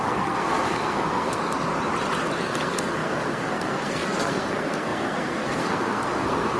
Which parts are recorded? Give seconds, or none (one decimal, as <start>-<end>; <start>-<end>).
1.7-2.4